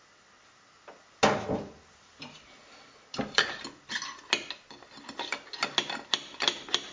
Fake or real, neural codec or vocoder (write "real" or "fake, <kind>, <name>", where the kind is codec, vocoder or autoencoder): real